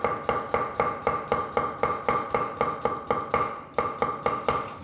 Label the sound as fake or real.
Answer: real